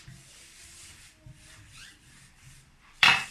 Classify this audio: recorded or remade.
remade